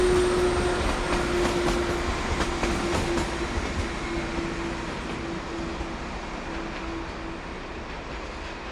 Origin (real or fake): real